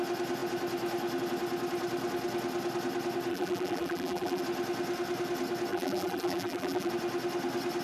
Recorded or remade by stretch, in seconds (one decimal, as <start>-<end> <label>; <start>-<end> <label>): 0.0-3.3 recorded; 3.3-4.4 remade; 4.4-5.7 recorded; 5.7-6.9 remade; 6.9-7.8 recorded